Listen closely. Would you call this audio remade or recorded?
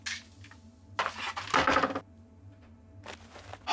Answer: recorded